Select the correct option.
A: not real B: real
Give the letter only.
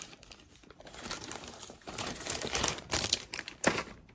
A